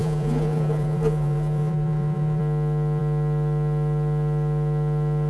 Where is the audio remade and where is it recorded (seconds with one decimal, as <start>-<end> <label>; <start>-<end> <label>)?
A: 0.0-2.4 remade; 2.4-5.3 recorded